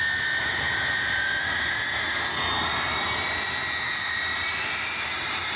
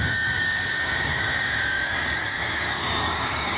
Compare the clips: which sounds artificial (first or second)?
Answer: second